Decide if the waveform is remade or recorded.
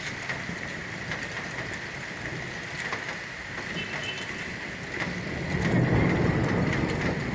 recorded